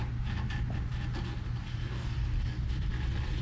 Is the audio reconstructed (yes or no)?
no